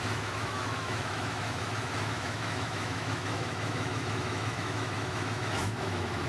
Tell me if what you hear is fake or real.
fake